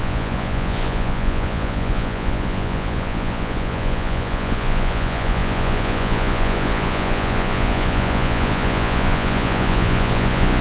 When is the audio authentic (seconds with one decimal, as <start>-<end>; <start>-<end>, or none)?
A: none